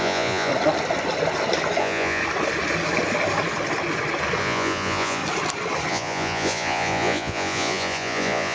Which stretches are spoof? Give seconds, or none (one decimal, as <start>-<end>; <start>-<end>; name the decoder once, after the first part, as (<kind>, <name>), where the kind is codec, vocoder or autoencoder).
0.0-0.5 (vocoder, Vocos); 1.8-2.2; 4.4-5.2; 5.9-8.5